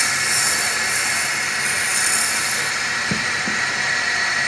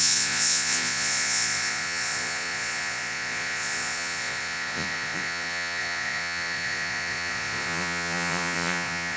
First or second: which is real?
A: first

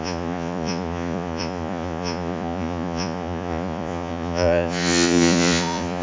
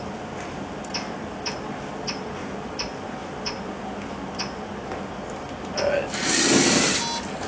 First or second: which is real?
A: second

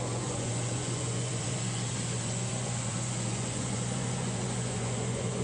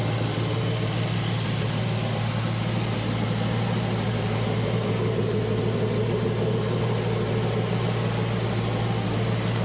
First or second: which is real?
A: second